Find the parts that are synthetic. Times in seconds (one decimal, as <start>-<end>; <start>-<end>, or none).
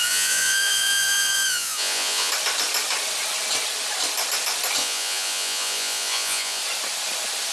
0.0-2.3; 4.8-6.6